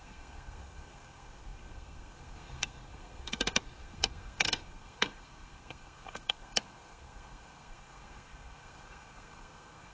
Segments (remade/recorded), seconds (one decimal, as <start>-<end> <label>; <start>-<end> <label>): 0.0-9.9 remade